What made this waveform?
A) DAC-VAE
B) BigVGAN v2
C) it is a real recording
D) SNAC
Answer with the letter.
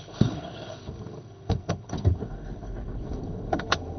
D